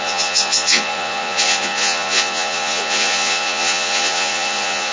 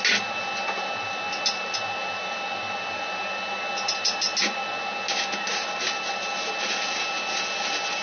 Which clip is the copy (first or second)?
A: first